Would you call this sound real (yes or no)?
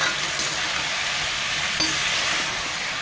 yes